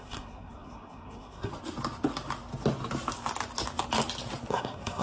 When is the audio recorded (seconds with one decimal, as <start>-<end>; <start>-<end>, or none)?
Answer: 1.5-4.5